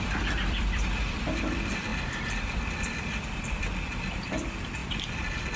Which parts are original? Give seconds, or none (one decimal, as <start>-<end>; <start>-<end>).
1.9-2.7; 4.8-5.6